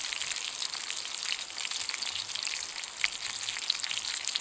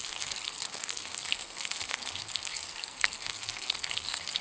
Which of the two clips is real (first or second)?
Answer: first